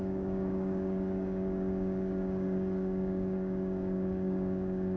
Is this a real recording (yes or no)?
no